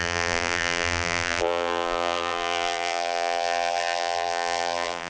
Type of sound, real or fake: fake